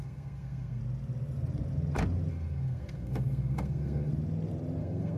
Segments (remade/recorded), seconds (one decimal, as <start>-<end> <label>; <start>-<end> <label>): 0.0-0.8 remade; 0.8-2.3 recorded; 2.3-4.1 remade; 4.1-4.8 recorded; 4.8-5.2 remade